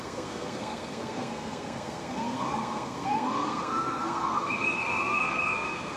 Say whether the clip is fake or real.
fake